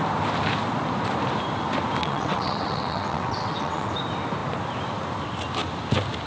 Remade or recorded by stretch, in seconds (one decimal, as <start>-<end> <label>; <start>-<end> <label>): 0.0-2.0 recorded; 2.0-3.9 remade; 3.9-6.3 recorded